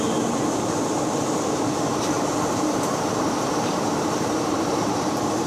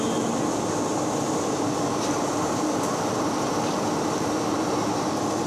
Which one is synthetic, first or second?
first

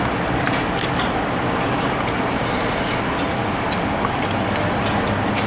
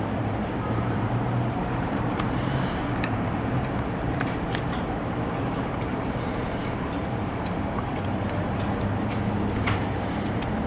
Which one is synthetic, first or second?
second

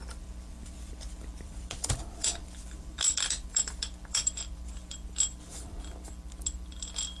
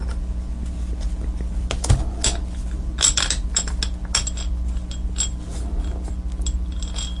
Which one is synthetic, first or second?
first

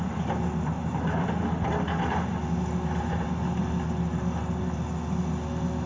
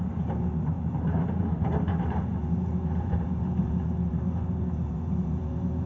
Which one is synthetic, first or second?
second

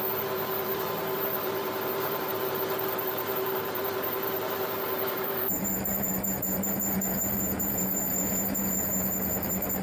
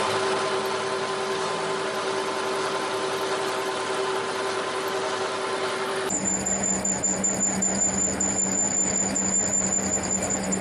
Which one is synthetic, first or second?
first